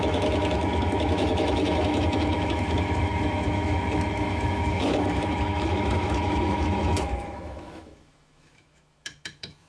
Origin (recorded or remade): remade